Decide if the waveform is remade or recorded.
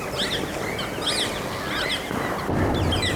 recorded